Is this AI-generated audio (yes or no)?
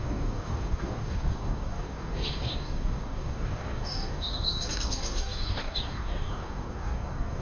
yes